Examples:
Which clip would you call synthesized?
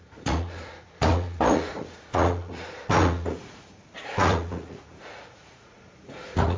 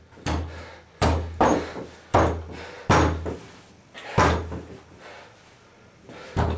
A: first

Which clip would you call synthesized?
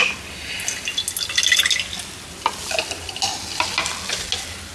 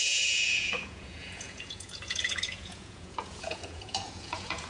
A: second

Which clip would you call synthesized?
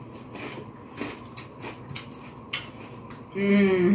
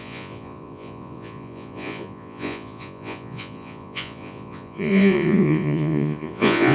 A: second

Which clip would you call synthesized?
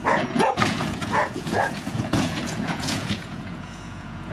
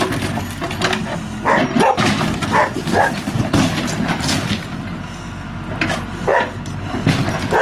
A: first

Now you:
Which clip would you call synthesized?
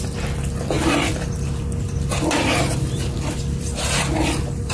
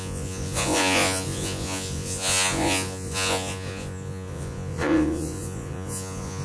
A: second